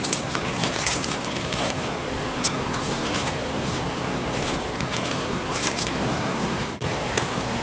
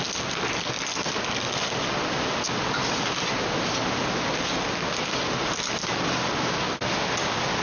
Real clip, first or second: second